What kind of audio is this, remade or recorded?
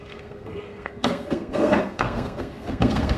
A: remade